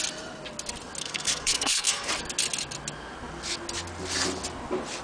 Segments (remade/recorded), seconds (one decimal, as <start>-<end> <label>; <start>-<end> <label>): 0.0-1.0 recorded; 1.0-2.1 remade; 2.1-5.0 recorded